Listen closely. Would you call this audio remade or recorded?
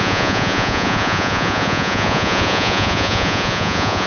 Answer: remade